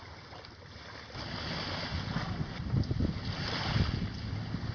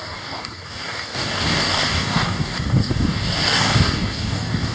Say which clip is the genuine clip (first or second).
first